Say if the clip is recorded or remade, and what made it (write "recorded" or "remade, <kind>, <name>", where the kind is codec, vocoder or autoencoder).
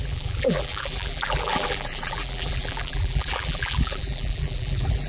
remade, vocoder, BigVGAN v2